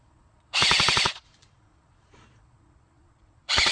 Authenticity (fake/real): fake